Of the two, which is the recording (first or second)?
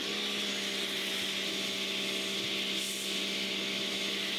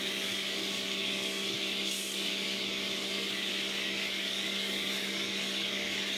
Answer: first